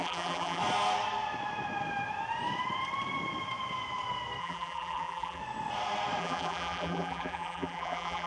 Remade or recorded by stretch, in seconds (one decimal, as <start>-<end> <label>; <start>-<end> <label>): 0.0-0.6 remade; 0.6-4.4 recorded; 4.4-5.4 remade; 5.4-6.2 recorded; 6.2-8.3 remade